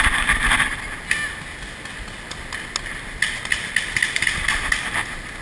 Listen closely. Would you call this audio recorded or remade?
recorded